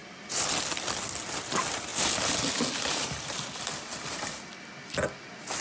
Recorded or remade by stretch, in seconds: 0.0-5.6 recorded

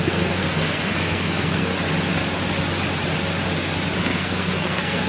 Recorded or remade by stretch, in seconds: 0.0-1.7 remade; 1.7-4.0 recorded; 4.0-5.1 remade

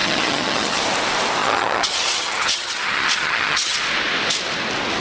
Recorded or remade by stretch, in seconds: 0.0-0.8 remade; 0.8-1.4 recorded; 1.4-3.8 remade; 3.8-5.0 recorded

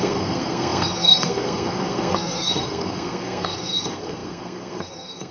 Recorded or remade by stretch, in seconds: 0.0-5.3 remade